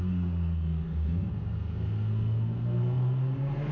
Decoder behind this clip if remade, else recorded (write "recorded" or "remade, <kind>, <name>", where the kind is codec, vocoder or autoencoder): remade, codec, SNAC